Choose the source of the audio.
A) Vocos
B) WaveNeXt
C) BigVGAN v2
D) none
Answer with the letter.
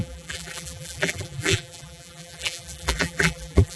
C